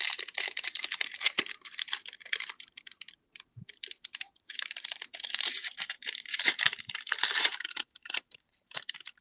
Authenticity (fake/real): fake